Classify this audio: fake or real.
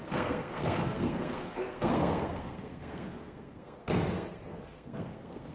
fake